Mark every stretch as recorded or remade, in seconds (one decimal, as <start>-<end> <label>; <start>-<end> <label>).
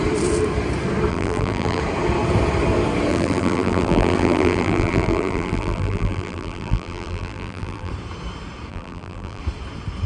0.0-1.1 recorded; 1.1-1.8 remade; 1.8-3.1 recorded; 3.1-7.9 remade; 7.9-8.7 recorded; 8.7-9.4 remade; 9.4-10.1 recorded